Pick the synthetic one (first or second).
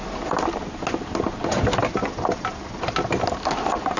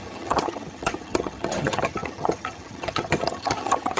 second